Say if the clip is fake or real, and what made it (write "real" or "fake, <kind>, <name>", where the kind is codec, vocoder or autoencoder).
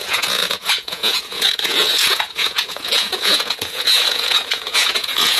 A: fake, vocoder, Vocos